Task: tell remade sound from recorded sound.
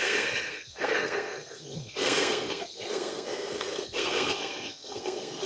remade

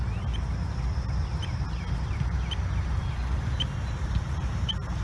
recorded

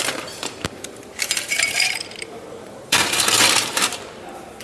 remade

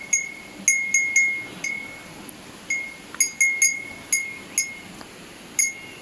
recorded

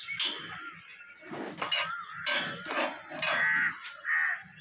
recorded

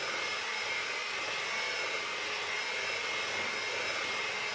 recorded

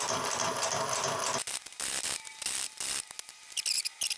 recorded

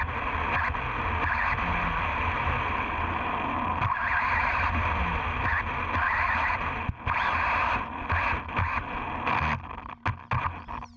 recorded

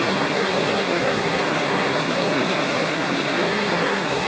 remade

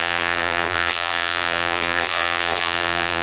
remade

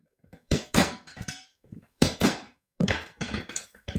remade